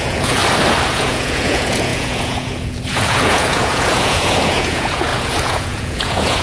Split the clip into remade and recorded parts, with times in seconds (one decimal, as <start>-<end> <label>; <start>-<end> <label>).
0.0-0.4 remade; 0.4-0.9 recorded; 0.9-6.4 remade